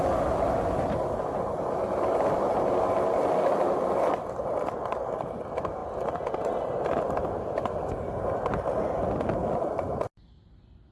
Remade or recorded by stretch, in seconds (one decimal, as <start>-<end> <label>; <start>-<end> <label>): 0.0-10.9 recorded